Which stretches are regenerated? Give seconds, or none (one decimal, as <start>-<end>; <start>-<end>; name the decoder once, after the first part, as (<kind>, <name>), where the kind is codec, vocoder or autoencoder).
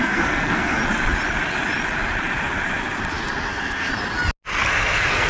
0.0-0.8 (codec, SNAC); 3.5-3.9; 4.6-5.3